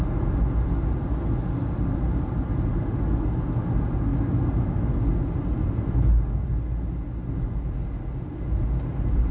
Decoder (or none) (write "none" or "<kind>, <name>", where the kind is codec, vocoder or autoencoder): none